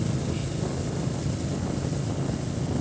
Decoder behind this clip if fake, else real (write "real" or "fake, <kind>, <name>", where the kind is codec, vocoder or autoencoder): real